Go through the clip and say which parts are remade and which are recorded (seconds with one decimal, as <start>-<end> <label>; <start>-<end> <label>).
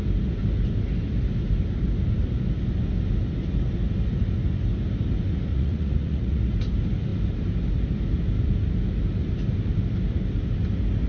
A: 0.0-5.5 recorded; 5.5-6.5 remade; 6.5-11.1 recorded